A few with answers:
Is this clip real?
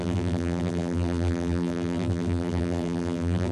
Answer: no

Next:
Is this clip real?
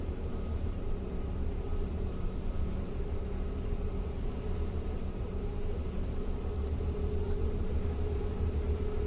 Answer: no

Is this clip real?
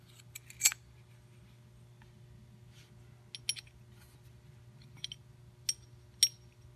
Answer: yes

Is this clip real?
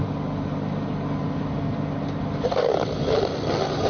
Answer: yes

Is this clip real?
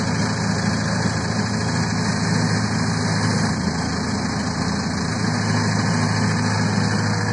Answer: yes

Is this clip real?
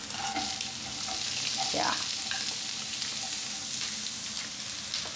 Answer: yes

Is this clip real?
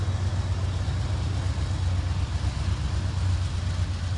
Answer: yes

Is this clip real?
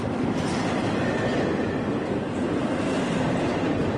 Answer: no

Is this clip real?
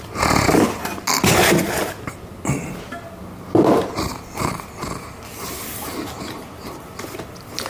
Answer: yes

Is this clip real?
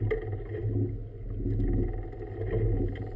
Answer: yes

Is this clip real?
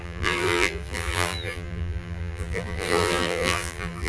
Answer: no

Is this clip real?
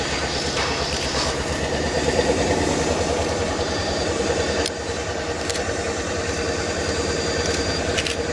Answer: no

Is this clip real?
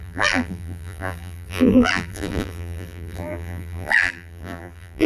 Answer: no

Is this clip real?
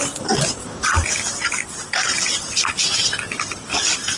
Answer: yes